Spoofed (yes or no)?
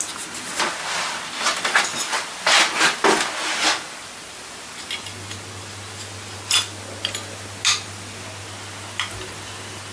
no